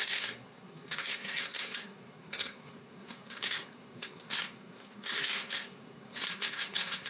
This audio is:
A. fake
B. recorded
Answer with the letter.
A